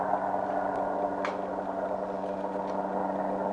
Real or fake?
real